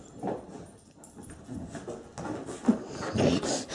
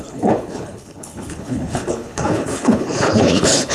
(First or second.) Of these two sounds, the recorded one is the first